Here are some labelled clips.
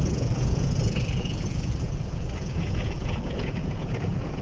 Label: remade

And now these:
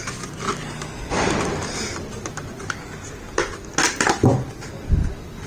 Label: recorded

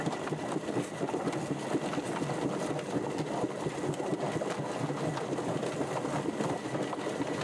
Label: recorded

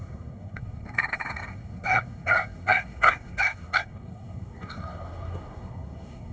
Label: remade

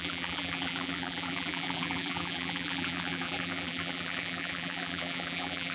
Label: remade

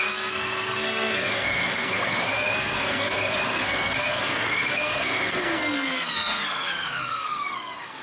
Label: remade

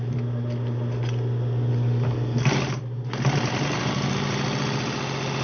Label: recorded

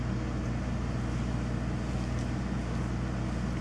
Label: recorded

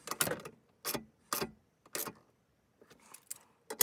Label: recorded